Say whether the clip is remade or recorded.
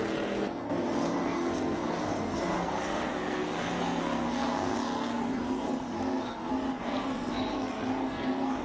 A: remade